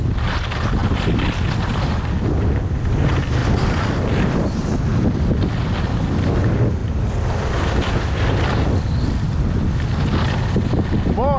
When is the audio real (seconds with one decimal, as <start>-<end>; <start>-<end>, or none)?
0.0-0.8; 3.0-3.4; 4.1-11.4